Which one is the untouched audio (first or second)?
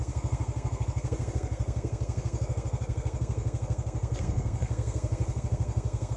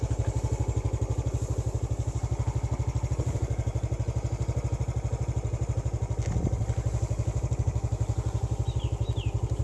second